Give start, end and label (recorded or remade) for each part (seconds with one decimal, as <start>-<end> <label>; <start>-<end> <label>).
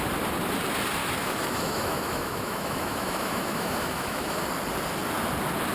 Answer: 0.0-1.0 recorded; 1.0-4.4 remade; 4.4-5.7 recorded